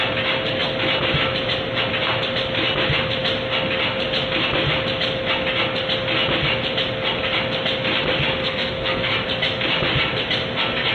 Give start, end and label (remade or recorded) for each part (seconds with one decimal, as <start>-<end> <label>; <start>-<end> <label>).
0.0-8.4 recorded; 8.4-9.1 remade; 9.1-10.9 recorded